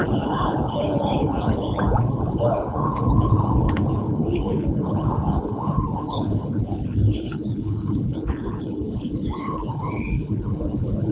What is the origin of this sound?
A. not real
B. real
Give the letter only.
A